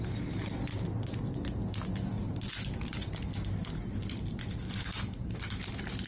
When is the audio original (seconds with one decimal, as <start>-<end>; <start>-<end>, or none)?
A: 0.0-6.1